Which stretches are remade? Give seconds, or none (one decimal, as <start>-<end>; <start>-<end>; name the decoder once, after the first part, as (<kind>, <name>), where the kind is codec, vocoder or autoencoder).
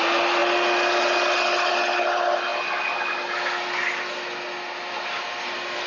none